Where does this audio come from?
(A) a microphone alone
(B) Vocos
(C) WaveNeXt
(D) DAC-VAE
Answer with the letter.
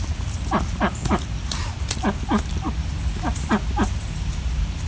A